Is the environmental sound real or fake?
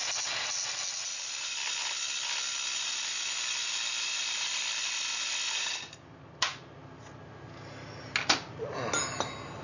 real